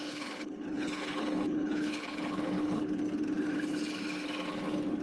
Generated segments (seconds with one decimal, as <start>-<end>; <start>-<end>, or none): 0.0-3.0